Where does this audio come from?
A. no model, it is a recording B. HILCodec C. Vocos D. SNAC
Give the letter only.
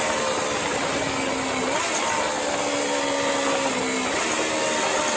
A